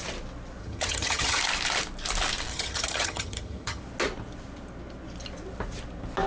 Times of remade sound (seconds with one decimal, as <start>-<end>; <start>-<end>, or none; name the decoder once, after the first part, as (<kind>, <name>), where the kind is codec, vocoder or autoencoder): 0.6-1.4 (vocoder, HiFi-GAN); 2.5-3.8